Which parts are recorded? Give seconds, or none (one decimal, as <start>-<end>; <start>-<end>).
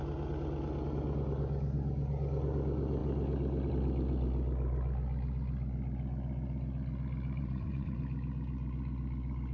0.0-7.4; 8.0-9.5